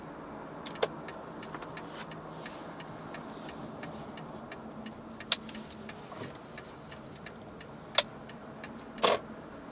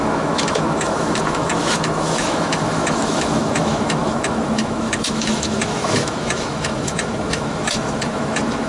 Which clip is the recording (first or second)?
first